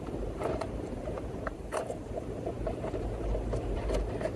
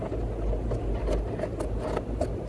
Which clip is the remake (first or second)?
first